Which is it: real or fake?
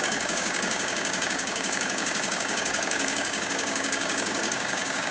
fake